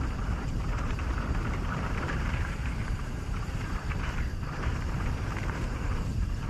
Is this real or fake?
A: fake